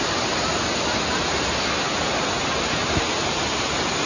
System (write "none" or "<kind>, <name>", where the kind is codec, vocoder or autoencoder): none